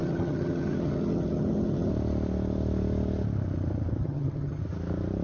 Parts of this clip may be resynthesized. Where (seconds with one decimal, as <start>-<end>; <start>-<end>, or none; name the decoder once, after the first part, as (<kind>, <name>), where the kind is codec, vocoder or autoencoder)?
0.0-1.9 (vocoder, HiFi-GAN); 4.0-4.6